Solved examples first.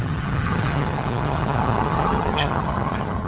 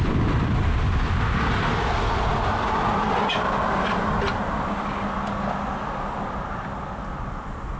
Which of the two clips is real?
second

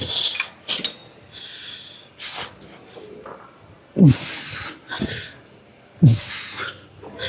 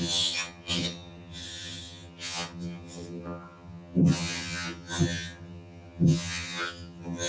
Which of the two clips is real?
first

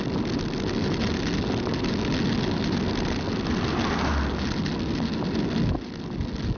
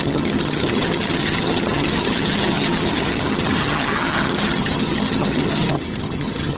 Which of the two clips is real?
first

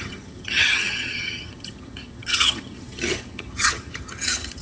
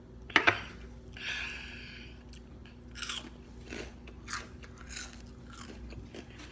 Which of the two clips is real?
second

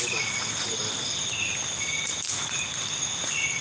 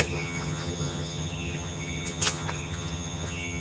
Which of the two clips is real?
first